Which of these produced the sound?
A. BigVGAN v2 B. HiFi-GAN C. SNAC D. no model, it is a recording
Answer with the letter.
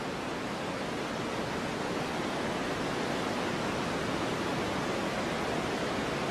D